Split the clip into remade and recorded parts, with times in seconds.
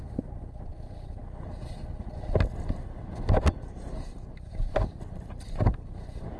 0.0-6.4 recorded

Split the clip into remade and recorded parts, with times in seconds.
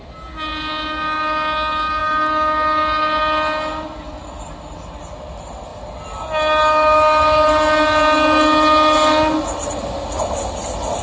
0.0-11.0 recorded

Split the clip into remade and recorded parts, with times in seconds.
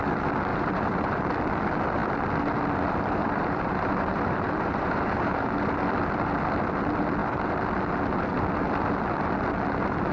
0.0-0.5 recorded; 0.5-1.3 remade; 1.3-3.2 recorded; 3.2-5.7 remade; 5.7-10.1 recorded